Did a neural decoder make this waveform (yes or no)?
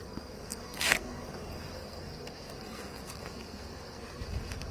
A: yes